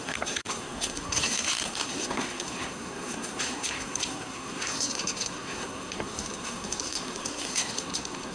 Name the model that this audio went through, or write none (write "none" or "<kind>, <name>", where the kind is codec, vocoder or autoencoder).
codec, SNAC